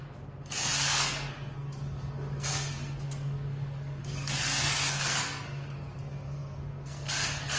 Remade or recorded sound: remade